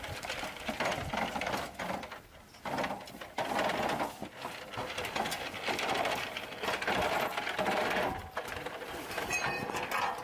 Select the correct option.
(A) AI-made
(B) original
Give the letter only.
B